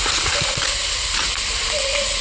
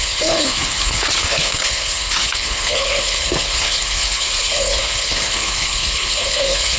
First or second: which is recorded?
first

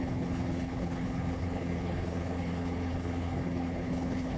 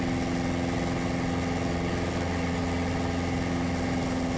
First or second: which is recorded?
second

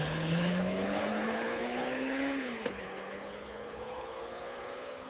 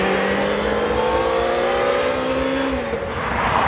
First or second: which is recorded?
second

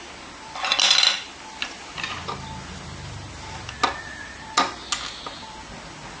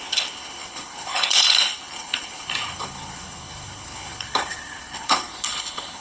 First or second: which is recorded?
first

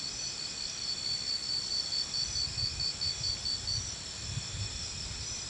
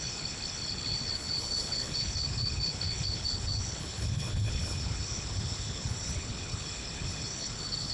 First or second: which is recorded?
first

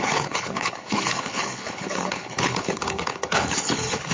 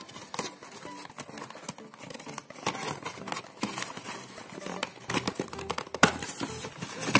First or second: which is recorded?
second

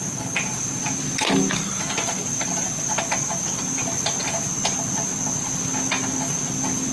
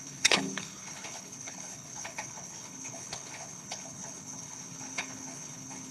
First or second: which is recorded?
first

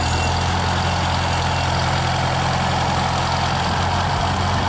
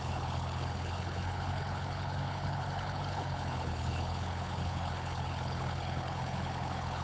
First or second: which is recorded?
first